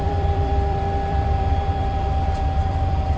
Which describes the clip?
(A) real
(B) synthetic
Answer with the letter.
B